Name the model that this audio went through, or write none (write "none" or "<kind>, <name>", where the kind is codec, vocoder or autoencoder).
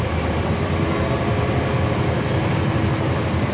none